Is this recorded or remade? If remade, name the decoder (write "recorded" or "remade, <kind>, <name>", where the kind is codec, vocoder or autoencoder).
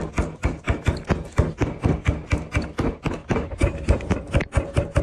recorded